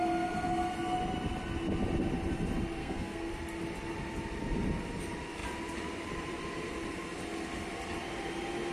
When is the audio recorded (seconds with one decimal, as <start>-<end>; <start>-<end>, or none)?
0.0-2.8; 3.3-8.7